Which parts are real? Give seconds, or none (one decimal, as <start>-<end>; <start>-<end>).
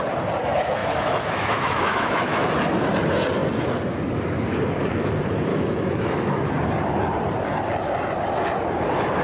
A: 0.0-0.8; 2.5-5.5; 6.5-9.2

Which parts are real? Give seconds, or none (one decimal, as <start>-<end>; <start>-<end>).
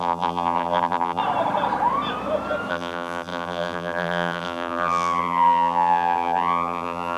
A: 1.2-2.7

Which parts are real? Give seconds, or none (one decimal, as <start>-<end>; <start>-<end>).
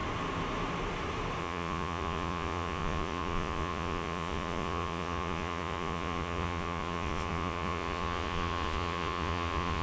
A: 0.0-1.4